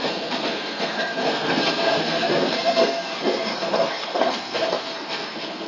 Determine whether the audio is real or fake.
fake